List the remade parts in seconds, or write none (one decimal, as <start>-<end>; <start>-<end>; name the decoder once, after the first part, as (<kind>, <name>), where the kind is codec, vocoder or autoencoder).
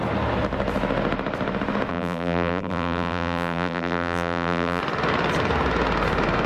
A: 1.9-4.8 (vocoder, BigVGAN v2)